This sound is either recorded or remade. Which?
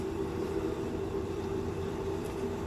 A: remade